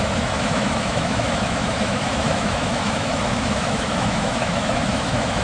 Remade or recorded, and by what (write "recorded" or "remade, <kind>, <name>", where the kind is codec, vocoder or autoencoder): remade, autoencoder, DAC-VAE